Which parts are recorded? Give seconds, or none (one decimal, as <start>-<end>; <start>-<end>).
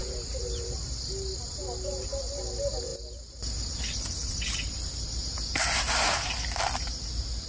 0.0-7.5